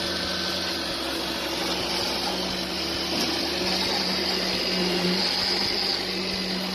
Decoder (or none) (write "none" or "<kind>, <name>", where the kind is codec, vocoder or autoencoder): none